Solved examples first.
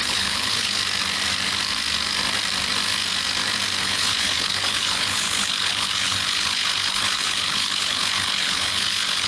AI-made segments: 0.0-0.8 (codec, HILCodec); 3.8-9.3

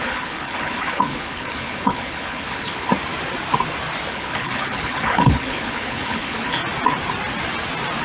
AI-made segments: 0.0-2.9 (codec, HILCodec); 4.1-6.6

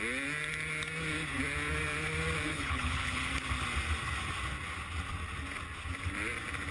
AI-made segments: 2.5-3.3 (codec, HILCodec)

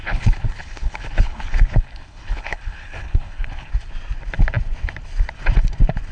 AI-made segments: 0.0-3.7 (codec, HILCodec)